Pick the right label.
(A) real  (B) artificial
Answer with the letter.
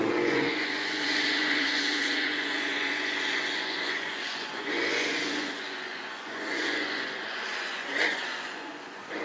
B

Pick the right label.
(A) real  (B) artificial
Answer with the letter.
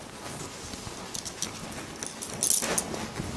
A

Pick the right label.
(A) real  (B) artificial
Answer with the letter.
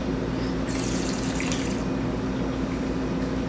A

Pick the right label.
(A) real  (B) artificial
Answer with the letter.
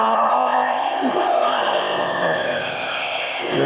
B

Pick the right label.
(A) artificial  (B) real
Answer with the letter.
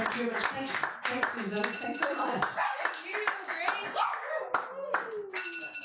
B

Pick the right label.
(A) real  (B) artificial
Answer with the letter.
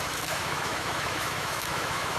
B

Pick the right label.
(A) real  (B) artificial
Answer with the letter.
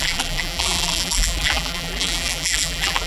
B